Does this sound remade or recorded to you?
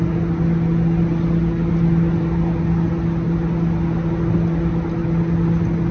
recorded